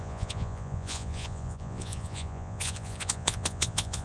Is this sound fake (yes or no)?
yes